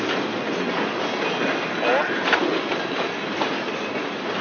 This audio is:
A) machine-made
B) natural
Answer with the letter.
B